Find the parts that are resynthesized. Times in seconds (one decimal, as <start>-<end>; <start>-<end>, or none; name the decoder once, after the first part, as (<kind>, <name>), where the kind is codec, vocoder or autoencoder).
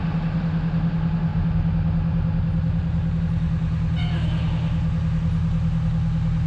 none